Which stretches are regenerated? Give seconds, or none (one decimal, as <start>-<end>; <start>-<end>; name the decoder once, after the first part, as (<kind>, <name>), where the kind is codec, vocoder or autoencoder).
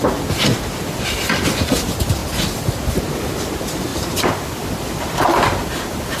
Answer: 2.2-3.3 (vocoder, BigVGAN v2); 3.9-4.7